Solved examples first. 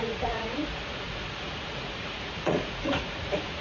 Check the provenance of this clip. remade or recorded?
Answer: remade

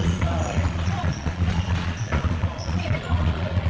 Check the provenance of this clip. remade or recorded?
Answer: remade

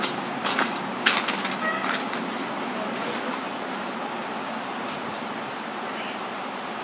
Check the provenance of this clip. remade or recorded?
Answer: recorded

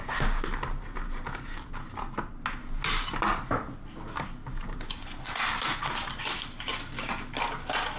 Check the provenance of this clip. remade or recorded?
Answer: recorded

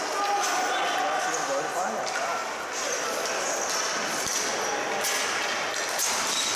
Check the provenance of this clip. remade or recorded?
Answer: recorded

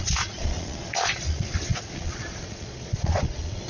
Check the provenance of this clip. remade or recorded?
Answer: remade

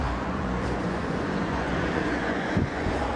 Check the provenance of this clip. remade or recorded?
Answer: remade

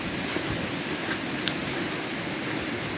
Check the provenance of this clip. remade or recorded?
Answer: recorded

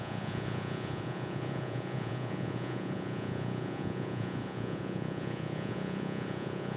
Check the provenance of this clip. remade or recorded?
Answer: remade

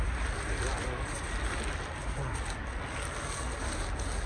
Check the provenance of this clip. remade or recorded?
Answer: recorded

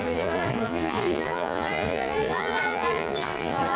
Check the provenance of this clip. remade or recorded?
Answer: remade